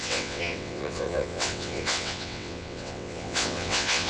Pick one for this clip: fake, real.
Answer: fake